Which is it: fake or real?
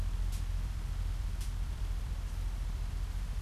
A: fake